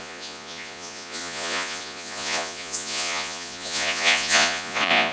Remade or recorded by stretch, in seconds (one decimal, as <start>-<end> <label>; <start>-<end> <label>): 0.0-5.1 remade